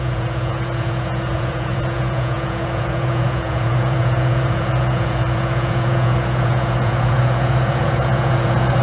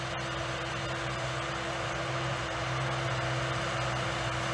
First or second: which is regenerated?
first